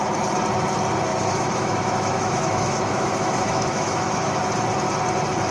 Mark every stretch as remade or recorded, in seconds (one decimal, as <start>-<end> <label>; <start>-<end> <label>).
0.0-1.1 recorded; 1.1-4.4 remade; 4.4-5.5 recorded